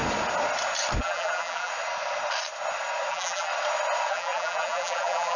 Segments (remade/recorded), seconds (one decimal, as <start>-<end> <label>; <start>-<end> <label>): 0.0-1.0 recorded; 1.0-1.7 remade; 1.7-3.1 recorded; 3.1-3.5 remade; 3.5-4.1 recorded; 4.1-5.4 remade

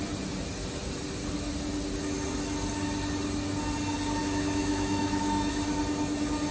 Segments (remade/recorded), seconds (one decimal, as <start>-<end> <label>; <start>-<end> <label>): 0.0-4.2 recorded; 4.2-5.5 remade; 5.5-6.5 recorded

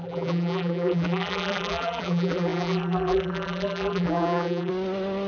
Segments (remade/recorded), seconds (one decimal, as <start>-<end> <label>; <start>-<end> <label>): 0.0-4.7 remade; 4.7-5.3 recorded

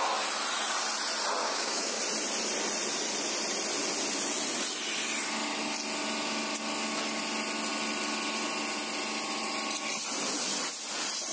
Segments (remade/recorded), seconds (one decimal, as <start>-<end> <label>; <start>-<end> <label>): 0.0-1.4 recorded; 1.4-2.0 remade; 2.0-11.3 recorded

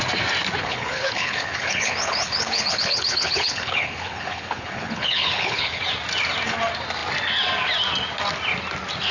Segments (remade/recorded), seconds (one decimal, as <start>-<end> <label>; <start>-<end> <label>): 0.0-0.6 recorded; 0.6-5.8 remade; 5.8-9.1 recorded

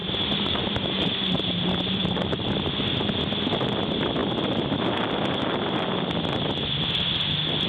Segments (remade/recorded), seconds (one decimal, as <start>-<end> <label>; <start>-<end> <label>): 0.0-2.3 remade; 2.3-7.7 recorded

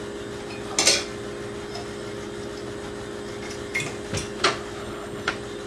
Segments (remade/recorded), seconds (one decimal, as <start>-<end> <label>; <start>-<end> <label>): 0.0-4.8 recorded; 4.8-5.3 remade; 5.3-5.7 recorded